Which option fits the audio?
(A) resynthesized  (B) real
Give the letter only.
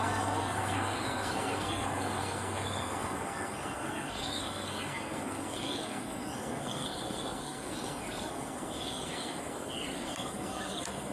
A